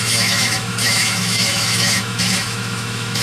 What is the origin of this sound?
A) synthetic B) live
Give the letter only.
A